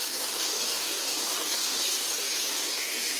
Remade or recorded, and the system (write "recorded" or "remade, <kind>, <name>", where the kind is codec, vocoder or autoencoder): remade, codec, DAC